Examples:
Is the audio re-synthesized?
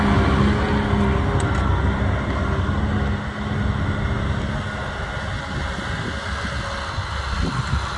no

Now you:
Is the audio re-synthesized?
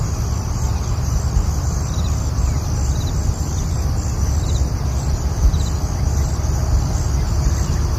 no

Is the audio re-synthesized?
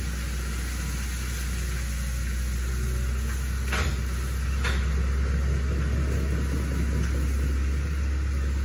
no